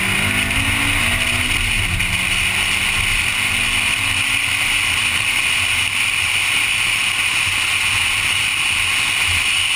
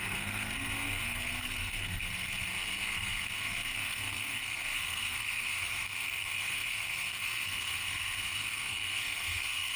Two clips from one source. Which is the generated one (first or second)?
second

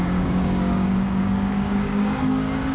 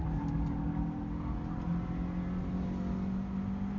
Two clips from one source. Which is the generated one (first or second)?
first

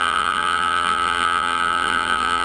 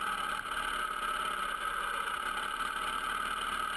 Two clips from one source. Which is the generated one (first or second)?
first